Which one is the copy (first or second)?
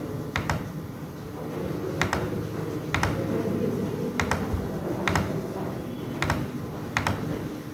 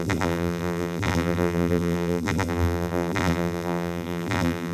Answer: second